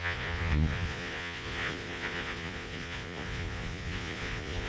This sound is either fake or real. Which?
fake